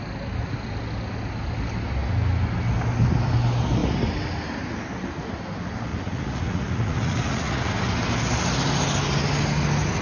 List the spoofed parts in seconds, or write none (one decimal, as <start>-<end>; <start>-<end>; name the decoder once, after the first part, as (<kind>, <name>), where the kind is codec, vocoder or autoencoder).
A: 5.9-7.7 (vocoder, Vocos)